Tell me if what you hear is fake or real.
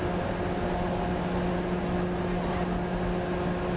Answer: real